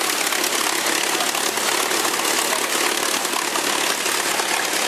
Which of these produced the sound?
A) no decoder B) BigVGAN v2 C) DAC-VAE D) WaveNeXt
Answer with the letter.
A